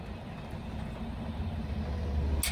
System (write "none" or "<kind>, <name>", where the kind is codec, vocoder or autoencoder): none